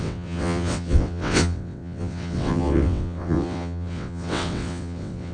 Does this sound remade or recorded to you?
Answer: remade